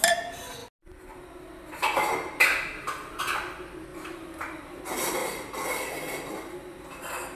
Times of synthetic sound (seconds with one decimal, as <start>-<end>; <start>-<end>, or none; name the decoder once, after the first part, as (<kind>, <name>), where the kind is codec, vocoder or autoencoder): 3.9-4.8 (vocoder, BigVGAN v2)